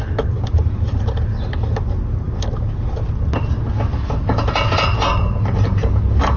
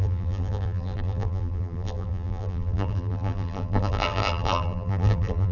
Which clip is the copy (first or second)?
second